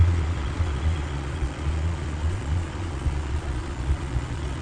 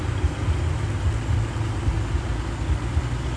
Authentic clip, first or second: second